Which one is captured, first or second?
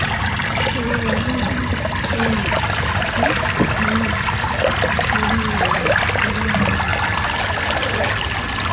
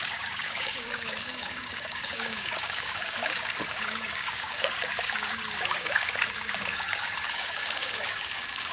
first